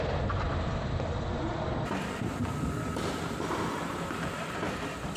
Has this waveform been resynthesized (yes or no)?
yes